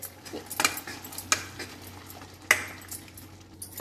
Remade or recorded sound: recorded